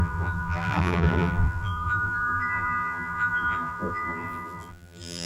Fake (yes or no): yes